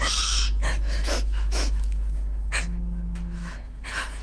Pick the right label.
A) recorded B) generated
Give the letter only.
B